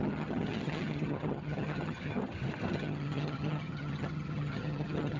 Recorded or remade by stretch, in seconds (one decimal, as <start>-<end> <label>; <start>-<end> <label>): 0.0-2.2 remade; 2.2-2.7 recorded; 2.7-5.2 remade